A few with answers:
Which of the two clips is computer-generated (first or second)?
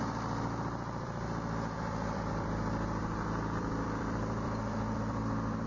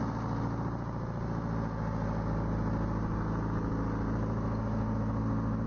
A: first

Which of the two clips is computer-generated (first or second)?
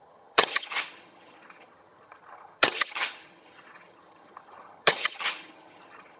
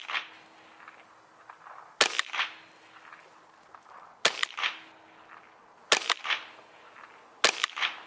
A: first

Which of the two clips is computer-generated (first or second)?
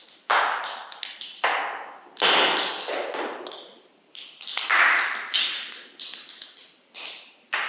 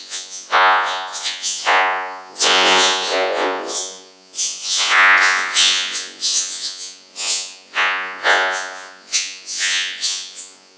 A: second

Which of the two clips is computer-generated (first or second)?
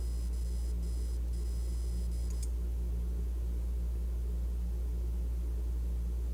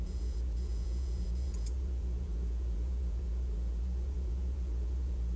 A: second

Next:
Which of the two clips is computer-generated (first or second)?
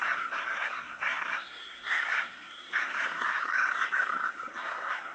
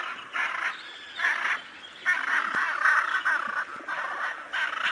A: first